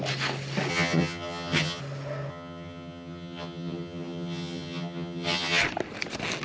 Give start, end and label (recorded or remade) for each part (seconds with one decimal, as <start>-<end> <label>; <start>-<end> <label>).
0.0-0.7 recorded; 0.7-1.8 remade; 1.8-2.3 recorded; 2.3-5.6 remade; 5.6-6.4 recorded